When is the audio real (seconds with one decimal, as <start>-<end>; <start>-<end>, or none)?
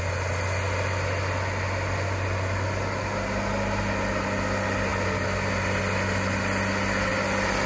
0.0-7.7